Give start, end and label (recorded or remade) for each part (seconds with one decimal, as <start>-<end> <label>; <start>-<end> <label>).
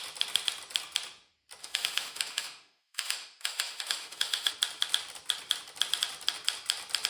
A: 0.0-1.6 recorded; 1.6-4.5 remade; 4.5-7.1 recorded